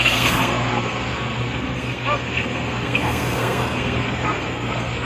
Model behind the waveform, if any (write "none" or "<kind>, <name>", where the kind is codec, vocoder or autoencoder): codec, SNAC